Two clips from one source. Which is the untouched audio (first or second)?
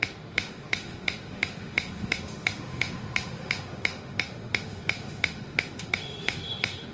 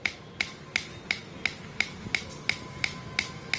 second